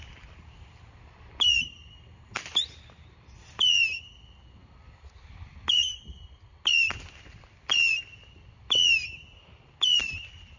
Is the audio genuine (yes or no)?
yes